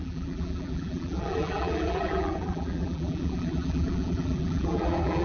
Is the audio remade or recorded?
remade